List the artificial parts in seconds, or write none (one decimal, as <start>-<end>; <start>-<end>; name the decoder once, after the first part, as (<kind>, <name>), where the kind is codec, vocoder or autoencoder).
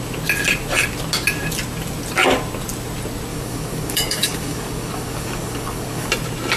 3.3-6.1 (codec, DAC)